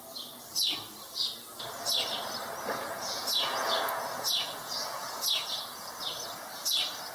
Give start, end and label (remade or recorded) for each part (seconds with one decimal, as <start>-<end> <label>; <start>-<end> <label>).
0.0-2.7 recorded; 2.7-5.9 remade; 5.9-7.1 recorded